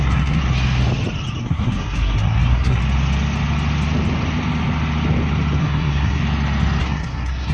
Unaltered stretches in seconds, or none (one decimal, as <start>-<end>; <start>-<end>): 0.4-1.4; 2.8-5.6; 6.2-6.8